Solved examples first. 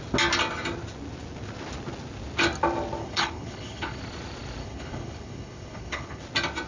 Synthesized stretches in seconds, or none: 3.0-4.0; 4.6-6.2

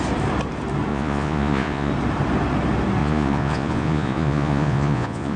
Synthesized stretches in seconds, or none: 0.9-1.9; 3.0-5.4

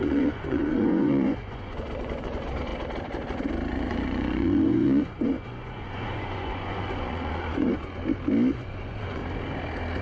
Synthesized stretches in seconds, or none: 0.0-2.7; 3.7-8.0; 8.5-9.2

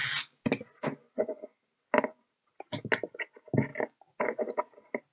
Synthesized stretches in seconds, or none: none

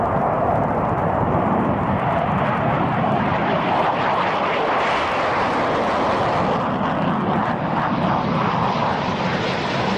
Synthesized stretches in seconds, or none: 1.0-2.6

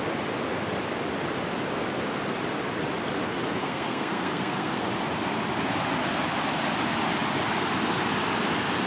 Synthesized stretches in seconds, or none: 3.6-4.9